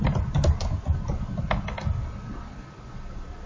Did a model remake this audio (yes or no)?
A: no